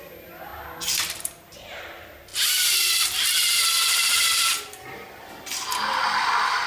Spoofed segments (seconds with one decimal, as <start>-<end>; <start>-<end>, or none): none